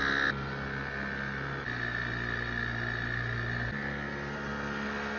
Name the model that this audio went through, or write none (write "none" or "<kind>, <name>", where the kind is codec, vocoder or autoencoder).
none